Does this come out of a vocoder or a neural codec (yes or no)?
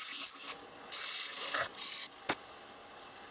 no